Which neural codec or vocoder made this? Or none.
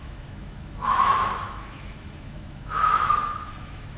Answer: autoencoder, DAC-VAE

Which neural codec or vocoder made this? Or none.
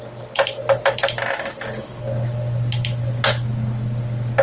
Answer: none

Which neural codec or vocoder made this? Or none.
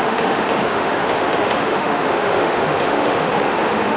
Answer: autoencoder, DAC-VAE